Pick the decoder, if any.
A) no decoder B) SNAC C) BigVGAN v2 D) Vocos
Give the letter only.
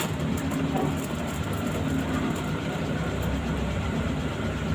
C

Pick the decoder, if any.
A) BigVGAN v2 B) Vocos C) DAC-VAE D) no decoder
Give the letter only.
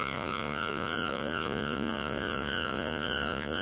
B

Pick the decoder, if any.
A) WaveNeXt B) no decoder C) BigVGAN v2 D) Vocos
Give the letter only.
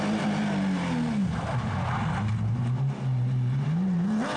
B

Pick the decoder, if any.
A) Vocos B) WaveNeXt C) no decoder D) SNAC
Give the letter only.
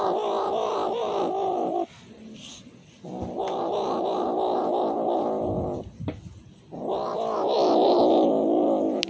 C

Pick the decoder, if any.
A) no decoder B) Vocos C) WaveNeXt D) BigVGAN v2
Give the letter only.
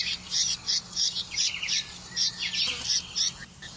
D